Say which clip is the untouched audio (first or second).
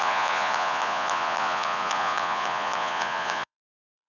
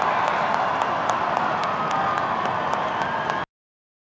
second